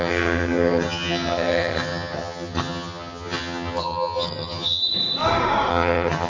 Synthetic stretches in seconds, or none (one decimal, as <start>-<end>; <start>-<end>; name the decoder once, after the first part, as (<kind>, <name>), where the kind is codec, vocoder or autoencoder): 0.0-4.8 (vocoder, HiFi-GAN); 5.7-6.3